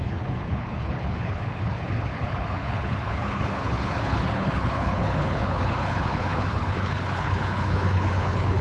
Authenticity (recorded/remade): remade